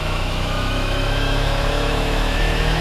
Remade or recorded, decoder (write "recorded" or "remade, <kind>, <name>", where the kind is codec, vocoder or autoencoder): remade, autoencoder, DAC-VAE